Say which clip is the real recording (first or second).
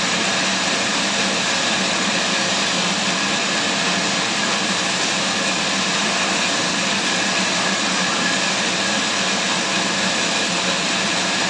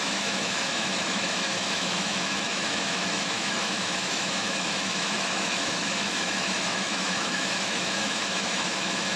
first